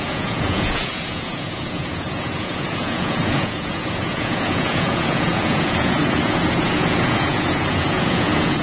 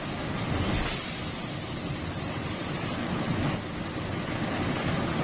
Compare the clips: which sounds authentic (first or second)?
second